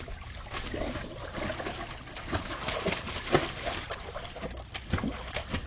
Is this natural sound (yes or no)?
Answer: yes